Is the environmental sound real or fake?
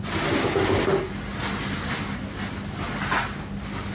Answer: real